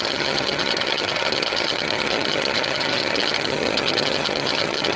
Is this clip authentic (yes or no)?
no